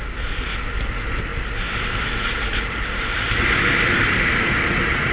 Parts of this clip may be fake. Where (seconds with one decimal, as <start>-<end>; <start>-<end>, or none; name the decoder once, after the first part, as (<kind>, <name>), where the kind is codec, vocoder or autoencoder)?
none